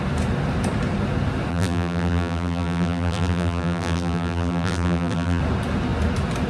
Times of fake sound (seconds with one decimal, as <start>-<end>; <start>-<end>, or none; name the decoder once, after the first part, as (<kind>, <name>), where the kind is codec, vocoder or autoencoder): 1.5-5.4 (vocoder, BigVGAN v2)